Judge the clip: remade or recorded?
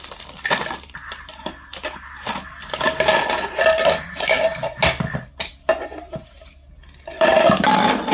recorded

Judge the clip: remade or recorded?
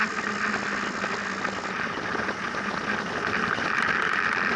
recorded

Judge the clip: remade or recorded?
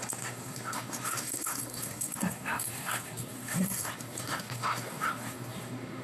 remade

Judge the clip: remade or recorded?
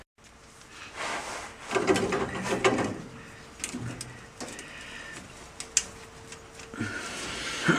recorded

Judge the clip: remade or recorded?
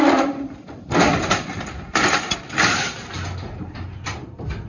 remade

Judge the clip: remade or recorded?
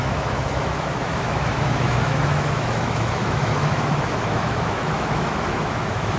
remade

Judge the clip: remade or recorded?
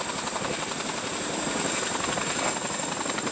recorded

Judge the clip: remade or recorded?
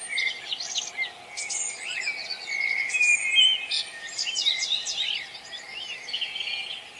recorded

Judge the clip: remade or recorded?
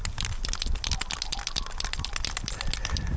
recorded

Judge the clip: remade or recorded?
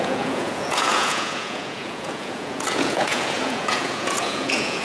remade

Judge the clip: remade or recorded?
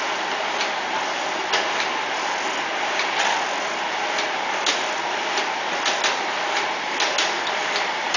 recorded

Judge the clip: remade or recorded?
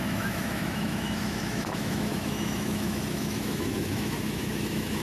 remade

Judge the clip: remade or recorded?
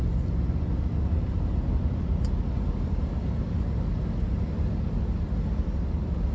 recorded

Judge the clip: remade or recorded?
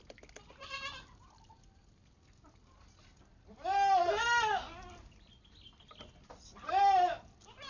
recorded